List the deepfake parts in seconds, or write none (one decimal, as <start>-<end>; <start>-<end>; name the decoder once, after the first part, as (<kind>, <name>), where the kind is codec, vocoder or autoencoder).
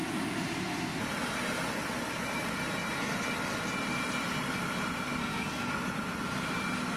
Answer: 5.2-5.7 (codec, SNAC)